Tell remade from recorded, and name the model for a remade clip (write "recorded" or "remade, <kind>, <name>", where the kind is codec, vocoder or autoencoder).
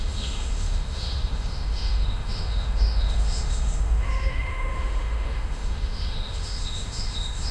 remade, autoencoder, DAC-VAE